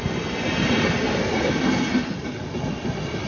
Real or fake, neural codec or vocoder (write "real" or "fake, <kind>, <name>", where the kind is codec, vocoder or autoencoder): real